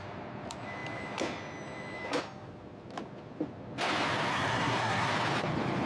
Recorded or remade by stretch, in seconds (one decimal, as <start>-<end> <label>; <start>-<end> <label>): 0.0-4.3 recorded; 4.3-5.1 remade; 5.1-5.9 recorded